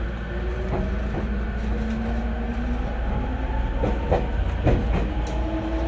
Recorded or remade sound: recorded